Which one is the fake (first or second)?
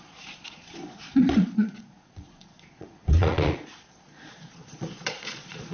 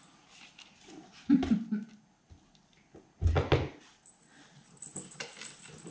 first